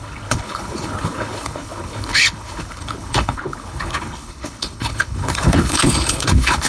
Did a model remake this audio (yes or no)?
yes